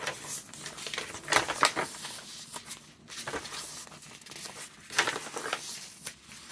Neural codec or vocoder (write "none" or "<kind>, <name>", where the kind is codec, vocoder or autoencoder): none